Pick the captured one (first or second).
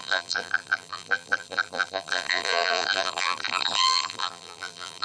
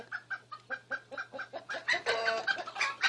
second